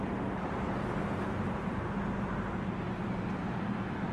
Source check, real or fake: real